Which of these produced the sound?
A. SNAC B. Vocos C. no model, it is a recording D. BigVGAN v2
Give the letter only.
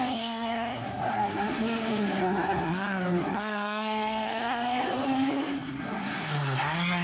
A